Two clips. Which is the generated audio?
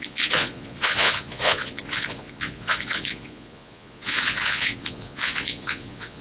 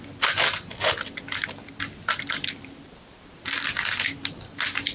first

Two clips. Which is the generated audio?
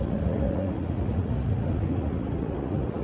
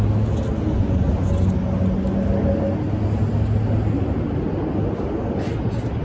first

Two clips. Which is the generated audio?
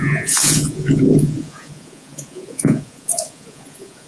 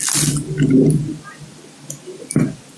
first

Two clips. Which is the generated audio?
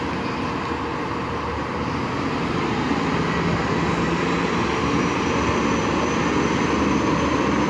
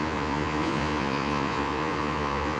second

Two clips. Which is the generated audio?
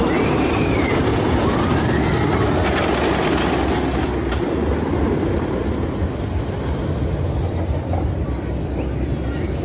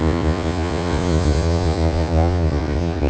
second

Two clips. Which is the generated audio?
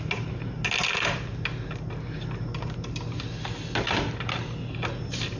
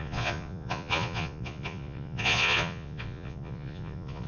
second